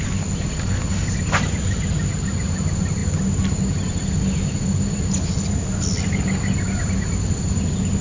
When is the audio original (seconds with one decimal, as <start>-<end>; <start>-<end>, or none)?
0.0-8.0